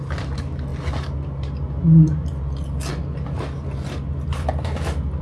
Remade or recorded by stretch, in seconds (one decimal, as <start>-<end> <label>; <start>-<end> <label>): 0.0-5.2 recorded